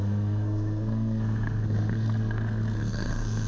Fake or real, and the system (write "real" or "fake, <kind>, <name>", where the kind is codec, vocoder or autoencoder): fake, codec, SNAC